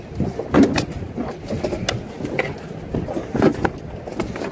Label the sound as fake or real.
real